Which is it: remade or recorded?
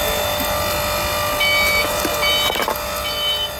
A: recorded